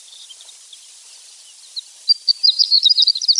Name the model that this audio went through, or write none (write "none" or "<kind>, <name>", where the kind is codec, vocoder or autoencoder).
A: none